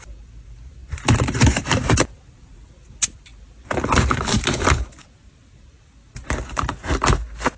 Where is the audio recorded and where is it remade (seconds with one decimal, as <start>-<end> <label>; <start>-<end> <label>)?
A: 0.0-7.6 recorded